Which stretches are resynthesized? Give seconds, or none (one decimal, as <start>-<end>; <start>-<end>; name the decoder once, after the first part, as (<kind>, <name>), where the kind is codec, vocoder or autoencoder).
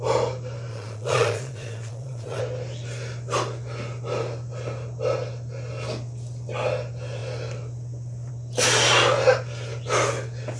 0.7-2.4 (vocoder, Vocos)